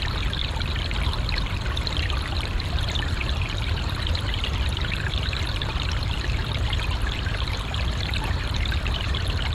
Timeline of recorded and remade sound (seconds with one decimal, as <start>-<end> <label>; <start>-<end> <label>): 0.0-0.4 remade; 0.4-2.2 recorded; 2.2-9.5 remade

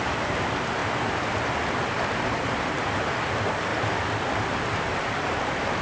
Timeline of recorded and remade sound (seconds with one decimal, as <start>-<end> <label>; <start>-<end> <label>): 0.0-5.8 recorded

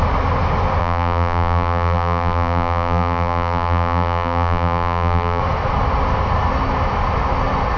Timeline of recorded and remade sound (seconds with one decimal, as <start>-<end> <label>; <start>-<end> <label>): 0.0-0.8 recorded; 0.8-5.4 remade; 5.4-7.8 recorded

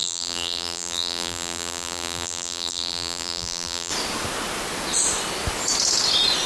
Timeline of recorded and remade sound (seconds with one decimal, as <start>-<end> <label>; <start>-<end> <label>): 0.0-3.9 remade; 3.9-6.5 recorded

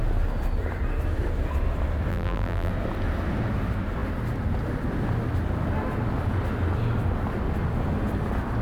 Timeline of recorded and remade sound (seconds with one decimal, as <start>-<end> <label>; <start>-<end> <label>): 0.0-2.1 recorded; 2.1-2.7 remade; 2.7-8.6 recorded

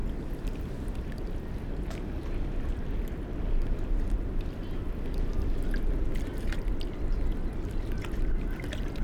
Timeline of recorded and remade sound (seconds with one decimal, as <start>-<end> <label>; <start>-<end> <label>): 0.0-9.0 recorded

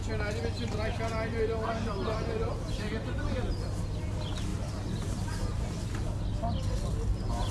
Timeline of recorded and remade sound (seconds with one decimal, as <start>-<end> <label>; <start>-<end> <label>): 0.0-2.4 recorded; 2.4-3.5 remade; 3.5-4.5 recorded; 4.5-5.9 remade; 5.9-7.5 recorded